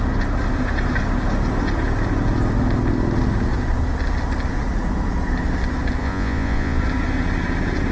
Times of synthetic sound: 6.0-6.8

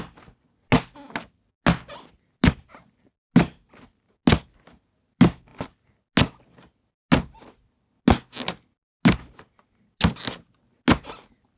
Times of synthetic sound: none

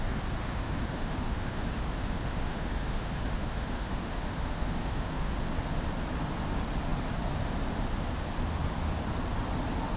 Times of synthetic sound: 0.4-5.3

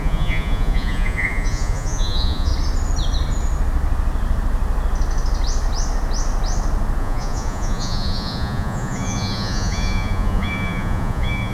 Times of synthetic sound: 0.0-2.5; 7.0-11.5

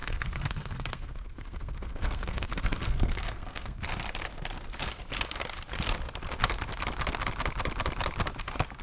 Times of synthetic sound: 0.0-3.8

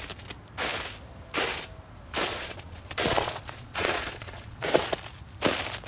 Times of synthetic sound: 2.3-4.7